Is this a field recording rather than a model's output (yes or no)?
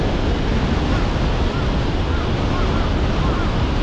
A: yes